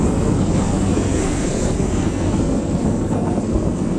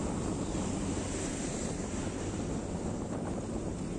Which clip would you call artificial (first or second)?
first